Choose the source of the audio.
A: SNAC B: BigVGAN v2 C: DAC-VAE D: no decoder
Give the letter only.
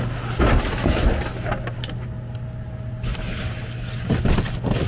D